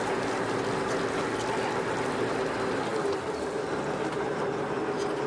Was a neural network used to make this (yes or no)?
no